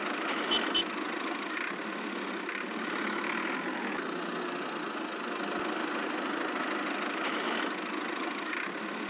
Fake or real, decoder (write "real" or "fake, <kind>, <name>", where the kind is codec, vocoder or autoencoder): real